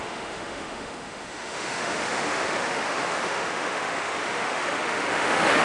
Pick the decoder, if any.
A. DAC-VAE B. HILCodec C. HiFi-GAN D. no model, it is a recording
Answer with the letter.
A